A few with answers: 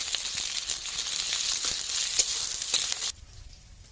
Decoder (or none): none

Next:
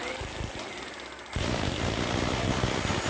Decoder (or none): none